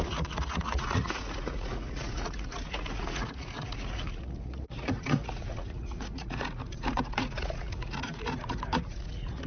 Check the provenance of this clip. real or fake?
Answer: fake